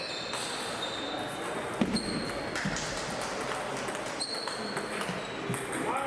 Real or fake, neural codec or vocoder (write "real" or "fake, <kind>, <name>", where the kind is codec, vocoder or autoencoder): real